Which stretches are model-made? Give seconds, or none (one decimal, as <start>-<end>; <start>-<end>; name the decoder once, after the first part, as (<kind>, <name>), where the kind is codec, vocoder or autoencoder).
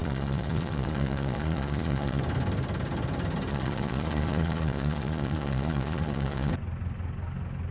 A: 0.0-2.2 (vocoder, Vocos); 3.5-6.5